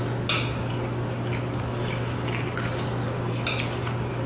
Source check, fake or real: real